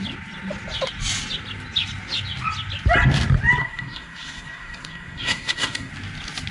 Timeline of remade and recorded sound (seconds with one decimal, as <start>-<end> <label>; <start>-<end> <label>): 0.0-3.6 recorded; 3.6-5.9 remade; 5.9-6.5 recorded